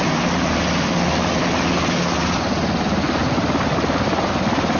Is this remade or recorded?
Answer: recorded